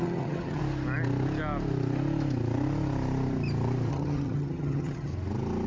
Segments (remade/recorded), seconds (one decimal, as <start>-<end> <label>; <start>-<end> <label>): 0.0-0.6 remade; 0.6-3.9 recorded; 3.9-5.1 remade; 5.1-5.7 recorded